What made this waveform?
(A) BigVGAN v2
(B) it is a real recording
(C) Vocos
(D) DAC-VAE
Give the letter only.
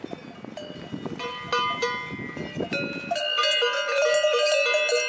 B